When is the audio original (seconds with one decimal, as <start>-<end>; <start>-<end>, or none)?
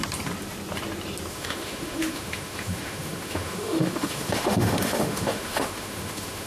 0.0-1.3